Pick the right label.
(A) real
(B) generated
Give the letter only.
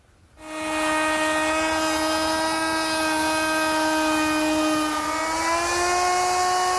A